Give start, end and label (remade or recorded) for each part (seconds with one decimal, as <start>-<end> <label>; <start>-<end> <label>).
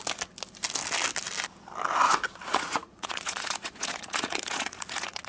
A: 0.0-2.5 recorded; 2.5-5.3 remade